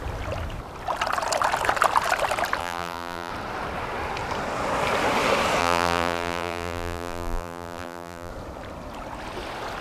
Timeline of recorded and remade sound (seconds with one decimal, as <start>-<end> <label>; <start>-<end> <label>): 0.0-2.6 recorded; 2.6-3.3 remade; 3.3-5.6 recorded; 5.6-8.3 remade; 8.3-9.8 recorded